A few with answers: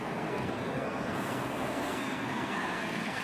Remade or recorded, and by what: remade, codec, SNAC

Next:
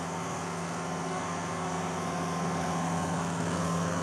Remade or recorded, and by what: remade, codec, SNAC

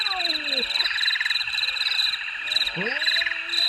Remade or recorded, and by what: recorded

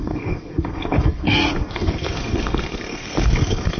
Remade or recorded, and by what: remade, codec, SNAC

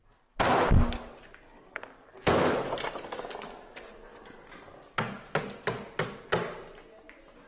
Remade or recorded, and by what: recorded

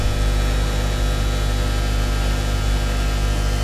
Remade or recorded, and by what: recorded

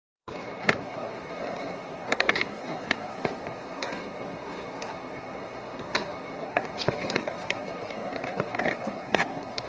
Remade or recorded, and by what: remade, codec, SNAC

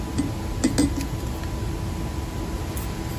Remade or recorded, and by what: recorded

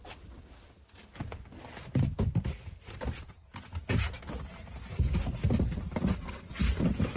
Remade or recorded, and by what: recorded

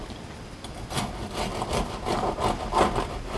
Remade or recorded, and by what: recorded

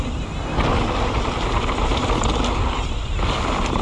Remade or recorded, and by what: recorded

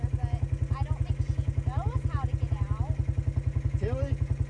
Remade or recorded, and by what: recorded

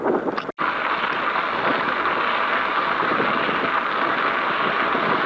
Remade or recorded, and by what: recorded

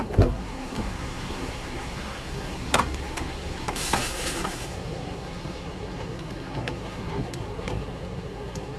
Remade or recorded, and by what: remade, codec, SNAC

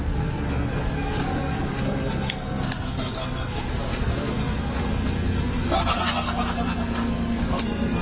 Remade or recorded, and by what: remade, codec, SNAC